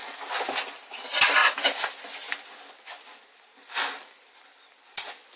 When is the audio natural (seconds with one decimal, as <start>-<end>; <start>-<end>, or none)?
0.0-5.4